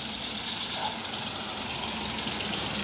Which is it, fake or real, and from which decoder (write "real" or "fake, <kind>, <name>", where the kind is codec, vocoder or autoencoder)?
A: real